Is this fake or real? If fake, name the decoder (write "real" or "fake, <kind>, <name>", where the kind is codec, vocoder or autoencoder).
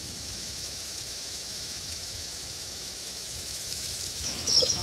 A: fake, autoencoder, DAC-VAE